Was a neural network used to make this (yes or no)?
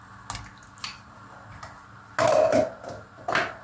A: no